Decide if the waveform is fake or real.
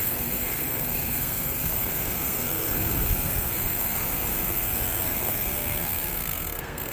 fake